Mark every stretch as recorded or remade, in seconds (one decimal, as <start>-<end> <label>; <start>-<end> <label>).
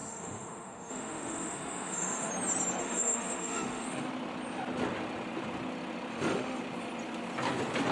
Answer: 0.0-2.3 remade; 2.3-2.8 recorded; 2.8-4.1 remade; 4.1-6.1 recorded; 6.1-6.6 remade; 6.6-7.9 recorded